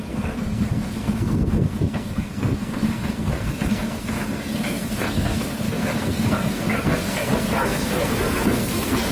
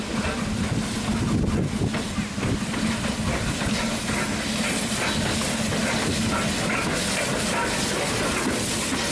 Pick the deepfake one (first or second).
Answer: first